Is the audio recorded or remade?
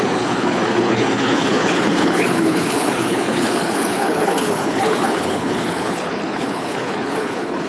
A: remade